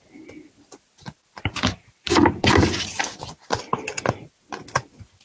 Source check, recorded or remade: recorded